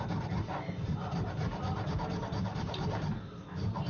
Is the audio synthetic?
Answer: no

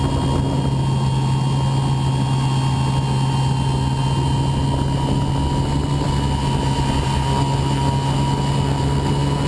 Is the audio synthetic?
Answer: no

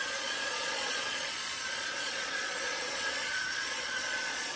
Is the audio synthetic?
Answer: yes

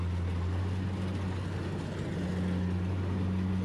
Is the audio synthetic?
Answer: no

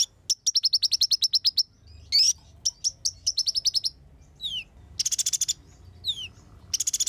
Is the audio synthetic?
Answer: no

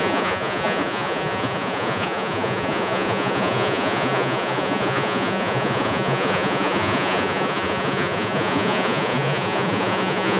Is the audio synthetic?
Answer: yes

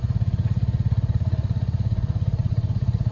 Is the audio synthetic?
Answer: yes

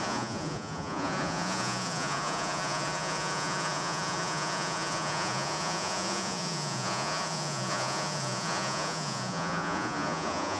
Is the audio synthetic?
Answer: yes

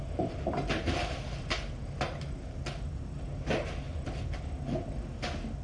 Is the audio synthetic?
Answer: no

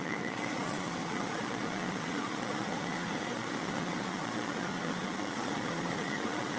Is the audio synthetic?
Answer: yes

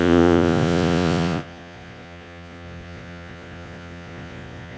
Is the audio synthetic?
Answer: yes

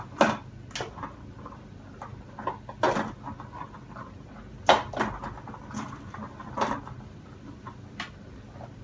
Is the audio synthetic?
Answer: no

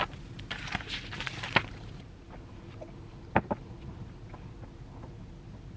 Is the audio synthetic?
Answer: no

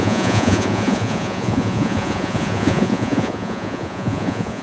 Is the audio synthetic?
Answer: yes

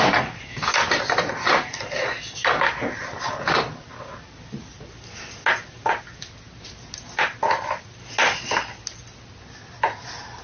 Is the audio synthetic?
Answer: no